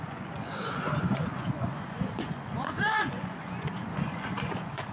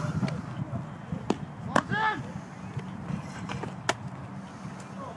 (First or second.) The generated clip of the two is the first